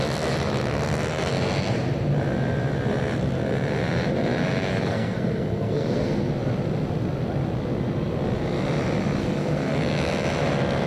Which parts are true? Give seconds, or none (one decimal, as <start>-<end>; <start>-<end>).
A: 0.0-4.7; 6.3-9.2; 9.8-10.9